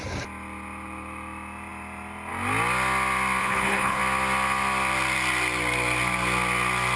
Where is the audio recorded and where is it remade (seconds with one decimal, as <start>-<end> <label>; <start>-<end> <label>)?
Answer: 0.0-3.4 recorded; 3.4-4.0 remade; 4.0-7.0 recorded